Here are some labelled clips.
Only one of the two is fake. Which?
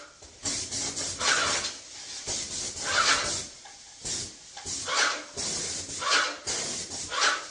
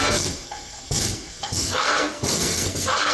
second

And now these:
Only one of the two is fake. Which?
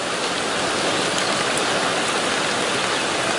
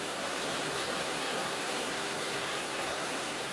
second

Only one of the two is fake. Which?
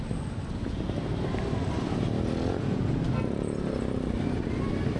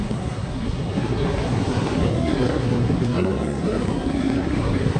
second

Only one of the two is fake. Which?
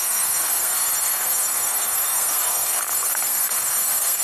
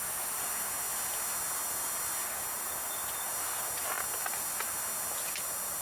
first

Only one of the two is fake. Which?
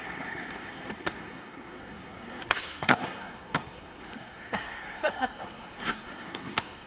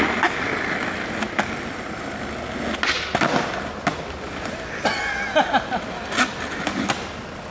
first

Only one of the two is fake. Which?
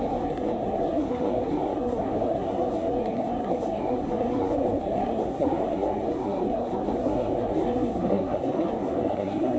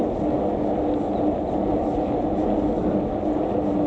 first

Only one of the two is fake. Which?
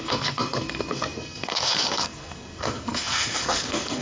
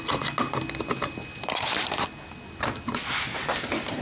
first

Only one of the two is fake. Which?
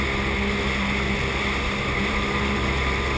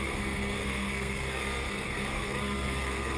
second